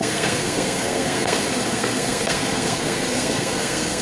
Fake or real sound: fake